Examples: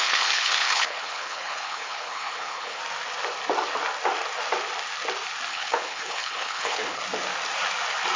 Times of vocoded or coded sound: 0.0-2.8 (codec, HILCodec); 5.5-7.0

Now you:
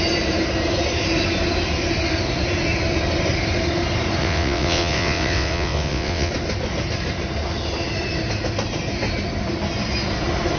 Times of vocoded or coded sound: 4.2-6.3 (vocoder, WaveNeXt)

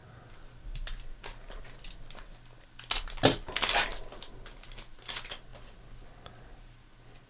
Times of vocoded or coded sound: none

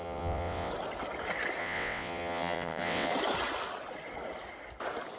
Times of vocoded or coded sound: 0.0-0.7 (vocoder, WaveNeXt); 1.6-3.1